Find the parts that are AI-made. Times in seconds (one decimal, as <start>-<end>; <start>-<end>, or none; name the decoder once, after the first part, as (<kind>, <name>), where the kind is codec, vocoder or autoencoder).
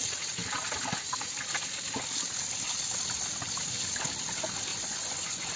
4.7-5.6 (vocoder, Vocos)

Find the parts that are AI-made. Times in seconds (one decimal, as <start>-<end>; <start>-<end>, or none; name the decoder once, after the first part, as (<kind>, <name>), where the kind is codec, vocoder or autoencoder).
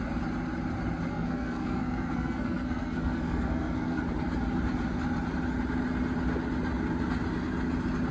1.1-4.0 (codec, SNAC)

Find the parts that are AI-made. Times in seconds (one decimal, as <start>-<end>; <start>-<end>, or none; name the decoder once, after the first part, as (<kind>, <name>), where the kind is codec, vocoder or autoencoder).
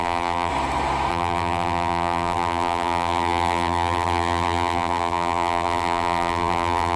0.0-0.5 (vocoder, BigVGAN v2); 1.1-7.0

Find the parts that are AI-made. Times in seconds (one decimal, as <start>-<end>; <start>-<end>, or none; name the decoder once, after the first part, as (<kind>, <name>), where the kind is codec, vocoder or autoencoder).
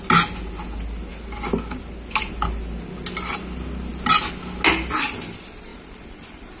5.7-6.6 (vocoder, BigVGAN v2)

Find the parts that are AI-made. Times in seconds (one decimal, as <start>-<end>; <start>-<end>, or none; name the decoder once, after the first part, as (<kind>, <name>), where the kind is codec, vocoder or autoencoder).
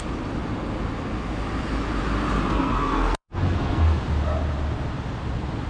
2.5-4.0 (codec, SNAC)